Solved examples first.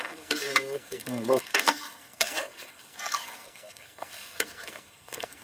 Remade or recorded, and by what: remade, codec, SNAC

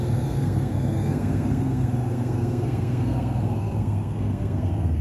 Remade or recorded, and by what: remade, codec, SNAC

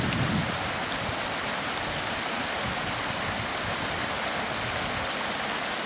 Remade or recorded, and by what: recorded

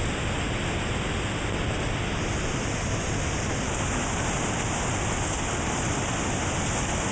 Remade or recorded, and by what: recorded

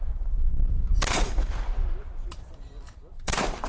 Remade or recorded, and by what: remade, vocoder, BigVGAN v2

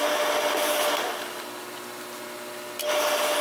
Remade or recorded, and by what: recorded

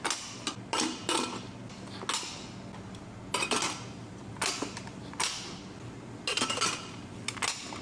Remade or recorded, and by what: recorded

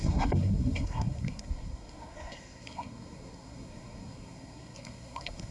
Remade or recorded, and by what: remade, codec, SNAC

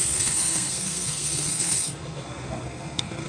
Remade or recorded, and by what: remade, codec, SNAC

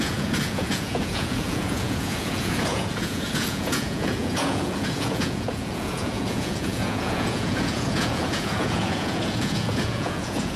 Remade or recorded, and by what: remade, vocoder, Vocos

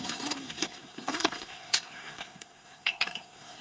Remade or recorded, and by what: remade, codec, SNAC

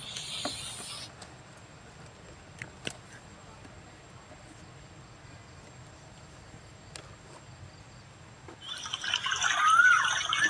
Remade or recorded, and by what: recorded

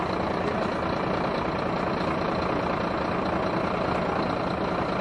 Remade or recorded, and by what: recorded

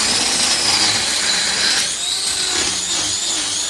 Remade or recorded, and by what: recorded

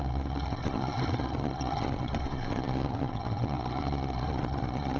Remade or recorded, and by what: remade, vocoder, Vocos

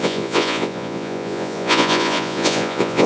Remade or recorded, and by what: remade, vocoder, Vocos